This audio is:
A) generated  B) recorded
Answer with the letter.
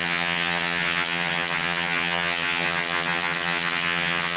A